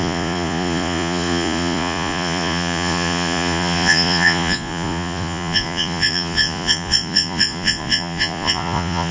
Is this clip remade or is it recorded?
remade